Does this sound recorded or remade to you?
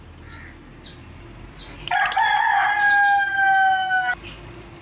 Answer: recorded